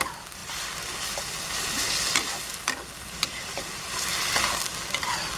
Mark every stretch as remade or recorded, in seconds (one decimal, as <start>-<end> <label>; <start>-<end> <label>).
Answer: 0.0-5.4 recorded

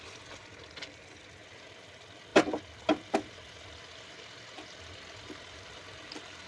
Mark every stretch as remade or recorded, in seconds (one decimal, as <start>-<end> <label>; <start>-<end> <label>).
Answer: 0.0-6.5 recorded

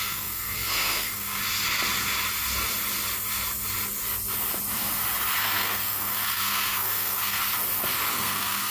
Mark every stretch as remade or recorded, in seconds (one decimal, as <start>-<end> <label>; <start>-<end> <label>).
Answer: 0.0-1.4 remade; 1.4-5.4 recorded; 5.4-7.4 remade; 7.4-8.1 recorded; 8.1-8.7 remade

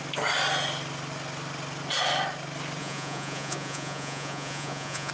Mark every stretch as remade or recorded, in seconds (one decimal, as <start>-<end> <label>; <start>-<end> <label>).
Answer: 0.0-2.8 recorded; 2.8-5.1 remade

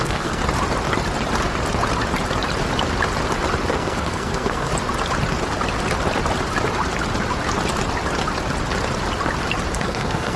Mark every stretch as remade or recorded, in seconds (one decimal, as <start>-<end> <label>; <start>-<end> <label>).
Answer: 0.0-0.4 remade; 0.4-3.7 recorded; 3.7-4.7 remade; 4.7-9.8 recorded; 9.8-10.4 remade

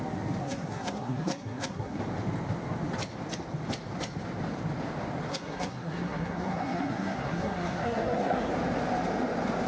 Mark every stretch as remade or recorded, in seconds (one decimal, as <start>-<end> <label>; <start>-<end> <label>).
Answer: 0.0-0.4 recorded; 0.4-2.0 remade; 2.0-5.3 recorded; 5.3-8.5 remade; 8.5-9.7 recorded

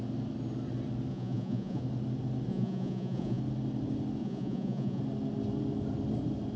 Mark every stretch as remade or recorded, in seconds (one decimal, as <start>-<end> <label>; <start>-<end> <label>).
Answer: 0.0-1.1 recorded; 1.1-1.8 remade; 1.8-2.5 recorded; 2.5-3.4 remade; 3.4-4.2 recorded; 4.2-5.0 remade; 5.0-6.6 recorded